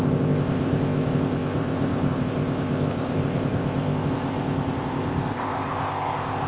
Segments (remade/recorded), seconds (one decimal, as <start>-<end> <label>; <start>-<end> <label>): 0.0-6.5 remade